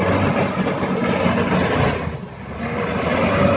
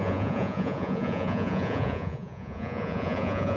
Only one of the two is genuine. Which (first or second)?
first